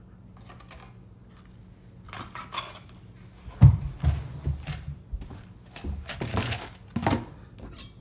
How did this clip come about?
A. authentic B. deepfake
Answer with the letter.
A